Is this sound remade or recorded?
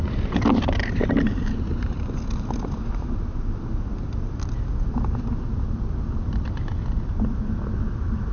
recorded